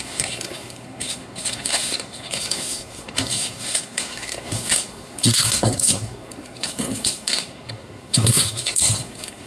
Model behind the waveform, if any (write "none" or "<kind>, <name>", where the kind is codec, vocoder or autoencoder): codec, SNAC